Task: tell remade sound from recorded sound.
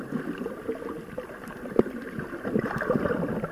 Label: recorded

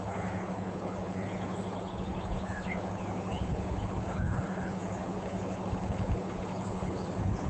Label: remade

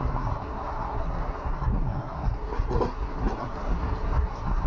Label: remade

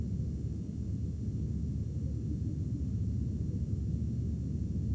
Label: recorded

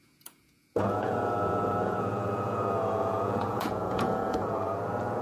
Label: remade